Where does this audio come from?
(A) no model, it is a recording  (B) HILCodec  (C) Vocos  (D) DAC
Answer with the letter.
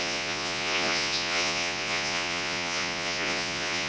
C